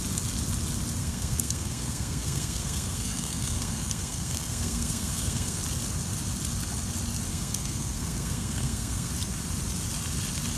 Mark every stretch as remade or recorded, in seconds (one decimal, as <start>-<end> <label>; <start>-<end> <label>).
0.0-1.0 recorded; 1.0-5.6 remade; 5.6-7.3 recorded; 7.3-9.1 remade; 9.1-10.6 recorded